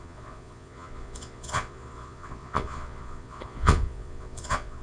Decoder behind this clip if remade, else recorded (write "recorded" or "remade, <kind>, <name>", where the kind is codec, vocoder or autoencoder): remade, vocoder, Vocos